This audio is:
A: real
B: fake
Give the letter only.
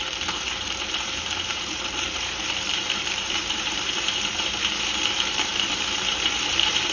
B